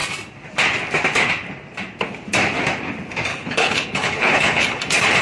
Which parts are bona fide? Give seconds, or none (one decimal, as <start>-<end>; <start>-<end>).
0.0-3.3; 4.8-5.2